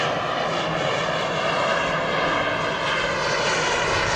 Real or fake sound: real